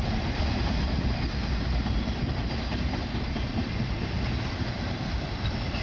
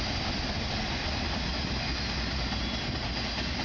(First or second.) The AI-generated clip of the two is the first